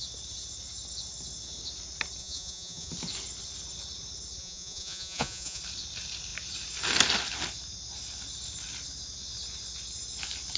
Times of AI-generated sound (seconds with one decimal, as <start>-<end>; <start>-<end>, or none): 2.2-2.9; 4.4-5.6